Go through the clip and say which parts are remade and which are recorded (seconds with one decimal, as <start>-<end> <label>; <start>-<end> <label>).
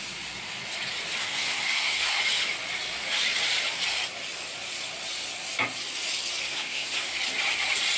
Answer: 0.0-1.2 recorded; 1.2-2.2 remade; 2.2-6.4 recorded; 6.4-7.1 remade; 7.1-8.0 recorded